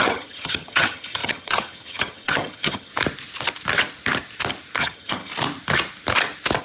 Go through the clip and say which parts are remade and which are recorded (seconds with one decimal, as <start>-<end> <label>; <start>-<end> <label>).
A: 0.0-2.9 remade; 2.9-4.8 recorded; 4.8-5.3 remade; 5.3-6.6 recorded